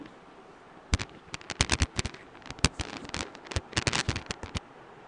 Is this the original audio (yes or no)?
yes